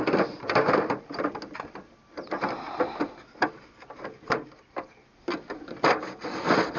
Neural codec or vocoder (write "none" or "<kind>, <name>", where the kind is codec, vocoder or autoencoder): none